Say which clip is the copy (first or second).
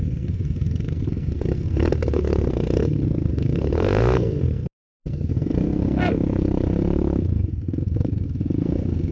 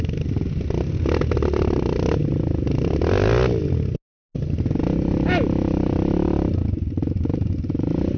first